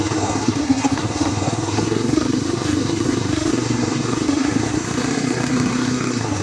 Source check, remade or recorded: remade